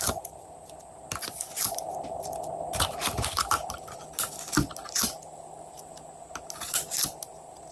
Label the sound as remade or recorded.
recorded